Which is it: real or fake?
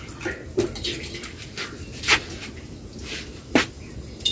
real